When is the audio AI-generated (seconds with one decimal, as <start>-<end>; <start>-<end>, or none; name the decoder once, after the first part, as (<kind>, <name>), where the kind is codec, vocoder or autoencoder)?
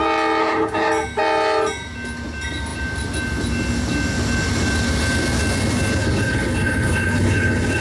0.4-0.9 (codec, HILCodec); 6.0-7.8